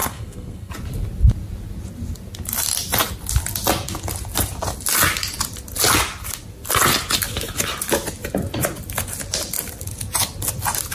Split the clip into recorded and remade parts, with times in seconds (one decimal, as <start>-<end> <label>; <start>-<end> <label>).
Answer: 0.0-0.7 remade; 0.7-10.9 recorded